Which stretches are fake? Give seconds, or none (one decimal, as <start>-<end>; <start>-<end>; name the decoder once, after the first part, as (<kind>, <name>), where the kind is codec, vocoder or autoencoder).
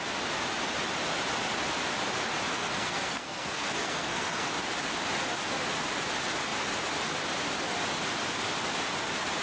2.5-4.5 (codec, SNAC)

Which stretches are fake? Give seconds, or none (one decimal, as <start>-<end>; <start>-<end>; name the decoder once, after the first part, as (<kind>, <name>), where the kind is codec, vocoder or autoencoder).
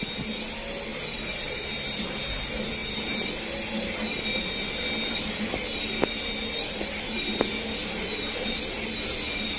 none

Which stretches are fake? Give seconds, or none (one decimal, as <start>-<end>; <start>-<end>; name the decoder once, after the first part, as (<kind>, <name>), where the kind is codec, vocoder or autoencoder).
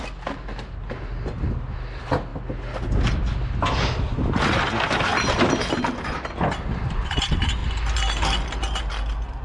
none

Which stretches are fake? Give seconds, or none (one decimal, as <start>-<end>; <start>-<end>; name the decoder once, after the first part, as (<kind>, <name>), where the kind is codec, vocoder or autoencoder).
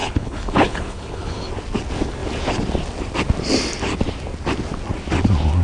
0.0-1.5 (codec, HILCodec)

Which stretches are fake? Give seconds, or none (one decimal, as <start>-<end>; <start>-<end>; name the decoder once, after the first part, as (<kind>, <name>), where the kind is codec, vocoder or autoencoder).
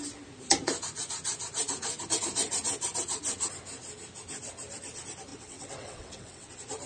5.3-6.5 (vocoder, WaveNeXt)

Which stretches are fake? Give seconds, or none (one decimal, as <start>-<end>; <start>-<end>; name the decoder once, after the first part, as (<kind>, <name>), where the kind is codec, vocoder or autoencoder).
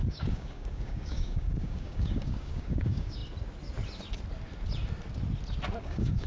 0.0-3.2 (codec, DAC); 5.8-6.3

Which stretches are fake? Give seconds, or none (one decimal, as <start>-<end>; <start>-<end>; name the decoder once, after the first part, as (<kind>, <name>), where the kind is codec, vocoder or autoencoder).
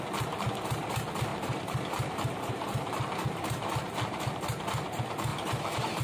1.3-4.3 (vocoder, BigVGAN v2); 5.3-6.0